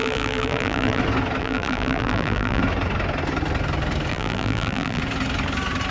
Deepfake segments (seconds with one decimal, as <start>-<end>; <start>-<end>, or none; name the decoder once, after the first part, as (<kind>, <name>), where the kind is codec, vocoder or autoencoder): 0.0-1.0 (vocoder, BigVGAN v2); 1.4-2.6; 4.1-5.0